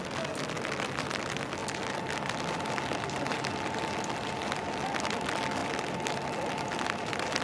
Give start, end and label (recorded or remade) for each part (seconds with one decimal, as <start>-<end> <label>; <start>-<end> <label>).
0.0-7.4 recorded